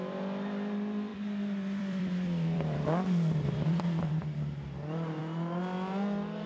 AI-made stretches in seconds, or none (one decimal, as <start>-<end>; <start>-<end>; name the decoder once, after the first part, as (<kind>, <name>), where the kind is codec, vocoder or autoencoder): 1.1-4.1 (vocoder, BigVGAN v2)